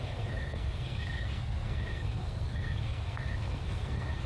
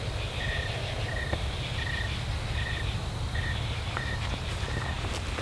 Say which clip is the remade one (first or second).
first